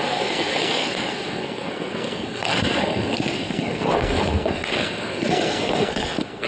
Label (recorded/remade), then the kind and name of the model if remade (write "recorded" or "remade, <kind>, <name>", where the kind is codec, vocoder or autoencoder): remade, codec, SNAC